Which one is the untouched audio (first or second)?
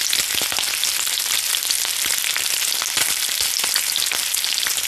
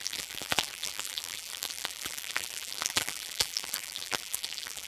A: first